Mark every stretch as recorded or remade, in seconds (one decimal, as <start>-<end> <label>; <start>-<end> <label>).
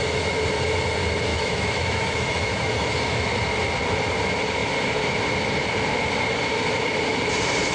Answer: 0.0-1.3 recorded; 1.3-3.2 remade; 3.2-7.7 recorded